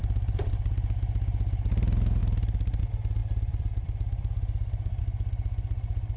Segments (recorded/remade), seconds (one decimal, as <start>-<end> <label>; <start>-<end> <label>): 0.0-0.7 remade; 0.7-3.2 recorded; 3.2-5.0 remade; 5.0-6.2 recorded